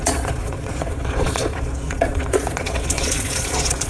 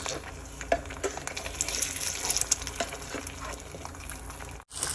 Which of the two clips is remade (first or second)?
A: first